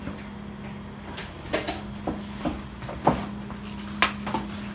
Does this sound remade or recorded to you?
recorded